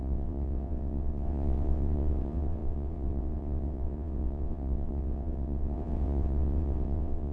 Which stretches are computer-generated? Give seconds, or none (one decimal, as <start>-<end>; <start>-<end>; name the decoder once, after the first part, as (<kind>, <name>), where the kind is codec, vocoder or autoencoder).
0.0-7.3 (vocoder, WaveNeXt)